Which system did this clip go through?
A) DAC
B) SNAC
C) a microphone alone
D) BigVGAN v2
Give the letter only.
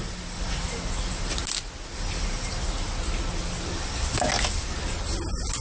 C